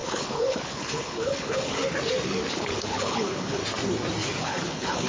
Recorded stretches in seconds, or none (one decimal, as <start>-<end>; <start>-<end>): 1.8-2.5; 3.6-4.4